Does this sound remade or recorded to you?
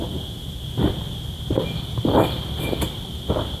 remade